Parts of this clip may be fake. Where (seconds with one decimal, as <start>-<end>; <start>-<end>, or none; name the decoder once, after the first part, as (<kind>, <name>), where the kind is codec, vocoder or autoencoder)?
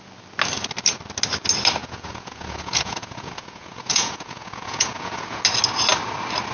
1.8-5.4 (vocoder, Vocos)